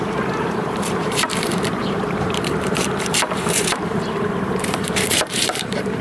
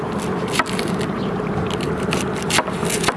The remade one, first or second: first